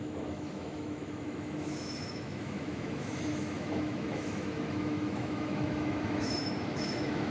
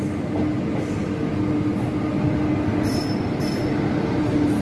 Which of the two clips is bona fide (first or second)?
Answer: second